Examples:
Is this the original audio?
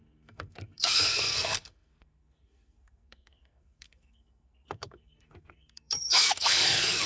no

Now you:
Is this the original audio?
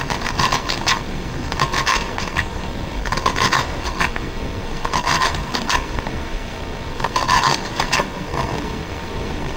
no